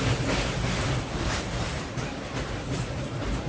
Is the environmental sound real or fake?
real